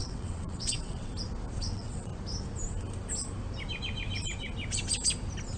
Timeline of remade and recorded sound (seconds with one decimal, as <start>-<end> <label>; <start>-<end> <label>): 0.0-1.1 remade; 1.1-1.6 recorded; 1.6-2.1 remade; 2.1-5.6 recorded